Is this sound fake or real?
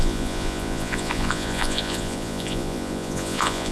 fake